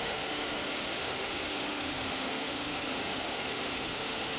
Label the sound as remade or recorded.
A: remade